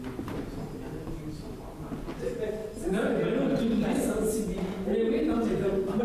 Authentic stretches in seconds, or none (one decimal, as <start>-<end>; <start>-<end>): 0.0-6.0